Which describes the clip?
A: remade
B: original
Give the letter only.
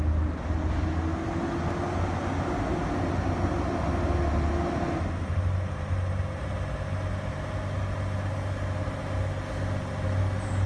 B